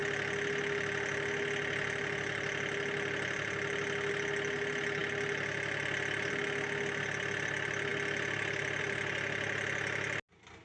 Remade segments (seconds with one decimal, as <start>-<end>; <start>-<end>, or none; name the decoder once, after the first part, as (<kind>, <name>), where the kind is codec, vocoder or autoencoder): none